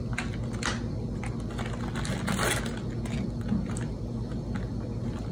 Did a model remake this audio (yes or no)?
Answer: no